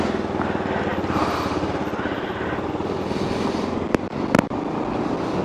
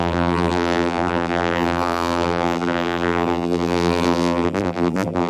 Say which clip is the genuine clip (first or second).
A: first